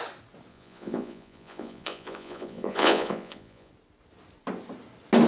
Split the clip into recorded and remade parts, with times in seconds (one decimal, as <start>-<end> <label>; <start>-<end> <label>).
0.0-0.5 recorded; 0.5-3.7 remade; 3.7-5.3 recorded